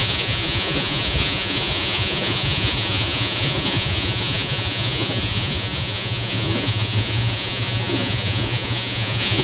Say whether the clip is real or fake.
fake